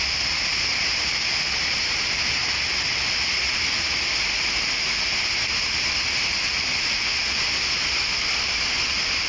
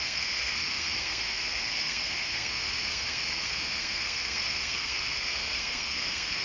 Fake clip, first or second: second